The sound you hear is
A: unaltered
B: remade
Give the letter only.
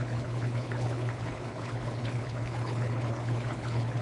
B